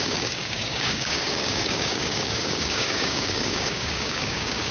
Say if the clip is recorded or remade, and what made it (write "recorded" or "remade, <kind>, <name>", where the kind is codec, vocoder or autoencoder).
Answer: remade, codec, DAC